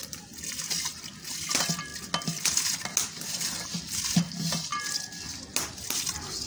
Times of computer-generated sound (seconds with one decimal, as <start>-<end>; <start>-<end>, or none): none